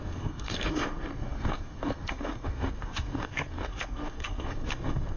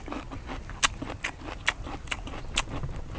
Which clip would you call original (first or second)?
second